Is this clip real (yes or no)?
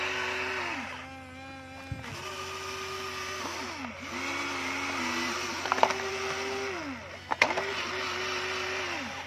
yes